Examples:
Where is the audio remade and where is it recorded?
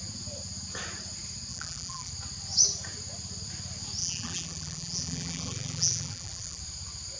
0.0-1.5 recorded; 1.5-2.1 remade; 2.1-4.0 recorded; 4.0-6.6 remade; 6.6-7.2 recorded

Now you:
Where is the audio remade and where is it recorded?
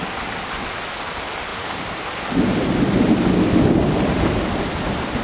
0.0-1.5 recorded; 1.5-2.3 remade; 2.3-5.2 recorded